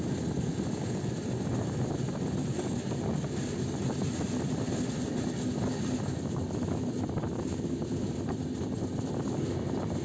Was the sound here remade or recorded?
recorded